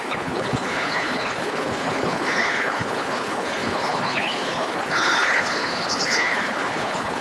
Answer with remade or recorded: remade